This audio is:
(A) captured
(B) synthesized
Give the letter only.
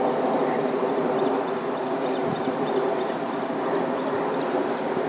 A